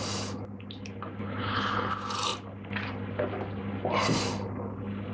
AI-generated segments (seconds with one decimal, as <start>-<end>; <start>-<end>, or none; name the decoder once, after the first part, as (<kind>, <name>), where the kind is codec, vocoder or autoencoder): 1.2-1.9 (codec, HILCodec)